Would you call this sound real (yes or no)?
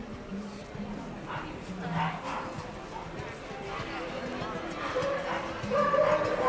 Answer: yes